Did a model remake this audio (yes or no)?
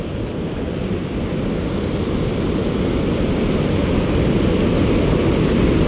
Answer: no